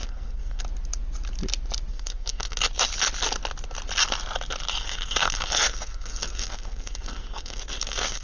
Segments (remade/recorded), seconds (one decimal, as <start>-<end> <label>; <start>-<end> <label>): 0.0-0.6 remade; 0.6-1.9 recorded; 1.9-2.7 remade; 2.7-4.8 recorded; 4.8-8.2 remade